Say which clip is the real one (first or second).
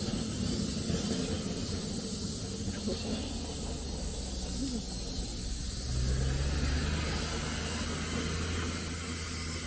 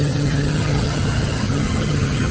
first